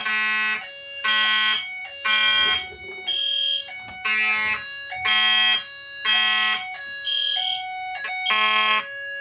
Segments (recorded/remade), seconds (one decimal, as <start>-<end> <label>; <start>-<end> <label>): 0.0-9.2 recorded